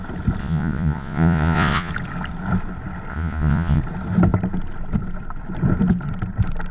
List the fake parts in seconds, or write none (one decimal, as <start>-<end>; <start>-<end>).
0.4-1.9; 3.1-3.8